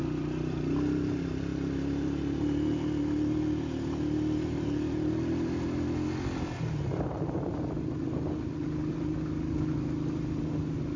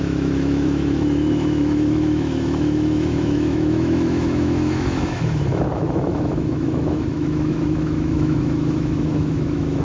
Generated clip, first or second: second